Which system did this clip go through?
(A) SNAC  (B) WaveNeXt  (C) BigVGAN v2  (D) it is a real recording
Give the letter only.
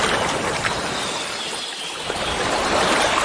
D